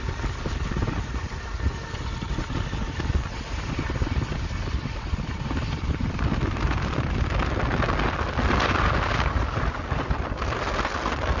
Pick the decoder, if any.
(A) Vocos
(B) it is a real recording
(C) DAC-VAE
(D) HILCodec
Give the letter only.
B